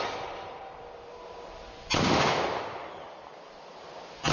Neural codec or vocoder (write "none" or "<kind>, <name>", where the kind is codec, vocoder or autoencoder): vocoder, BigVGAN v2